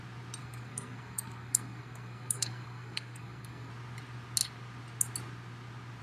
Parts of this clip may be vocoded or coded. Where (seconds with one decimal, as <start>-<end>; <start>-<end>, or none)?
0.4-3.7